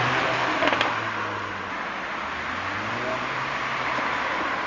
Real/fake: real